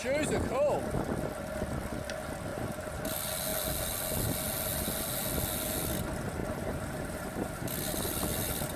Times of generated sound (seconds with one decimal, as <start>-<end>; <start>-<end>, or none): 2.5-3.0; 6.4-7.7